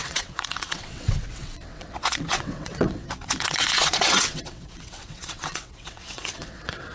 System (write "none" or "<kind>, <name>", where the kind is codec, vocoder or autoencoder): vocoder, WaveNeXt